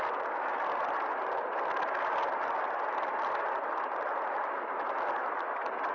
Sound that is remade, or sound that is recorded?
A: recorded